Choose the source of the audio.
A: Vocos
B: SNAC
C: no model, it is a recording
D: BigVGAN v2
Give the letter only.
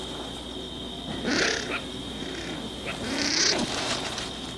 C